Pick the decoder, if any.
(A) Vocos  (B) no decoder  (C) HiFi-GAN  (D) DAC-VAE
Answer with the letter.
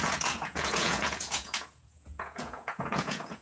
A